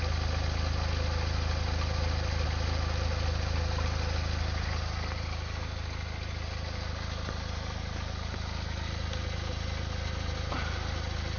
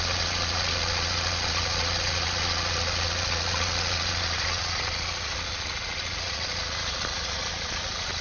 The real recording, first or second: first